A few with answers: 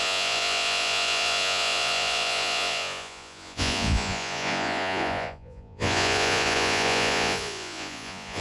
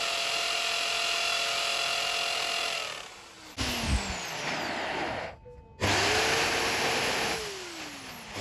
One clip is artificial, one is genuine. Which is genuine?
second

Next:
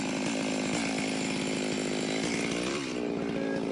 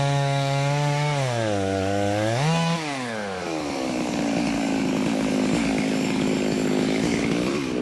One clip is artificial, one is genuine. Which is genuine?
first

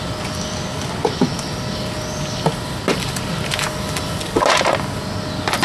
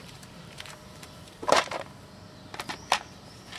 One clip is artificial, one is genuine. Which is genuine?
first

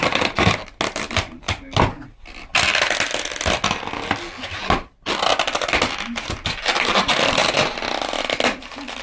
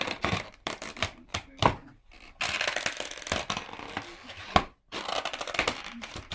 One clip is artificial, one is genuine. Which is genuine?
first